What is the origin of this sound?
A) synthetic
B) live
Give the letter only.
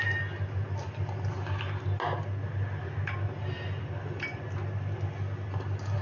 B